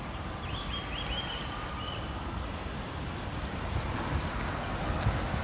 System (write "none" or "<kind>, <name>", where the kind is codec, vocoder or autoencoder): none